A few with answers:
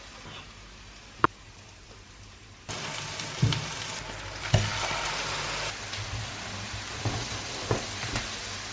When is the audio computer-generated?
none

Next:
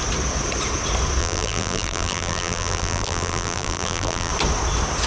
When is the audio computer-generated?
1.2-4.3 (vocoder, BigVGAN v2)

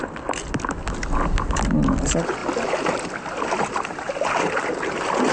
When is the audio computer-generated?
none

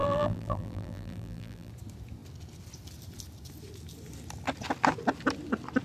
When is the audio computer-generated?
0.0-1.7 (vocoder, BigVGAN v2)

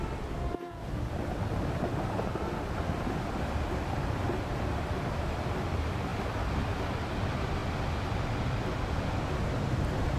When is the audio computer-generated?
none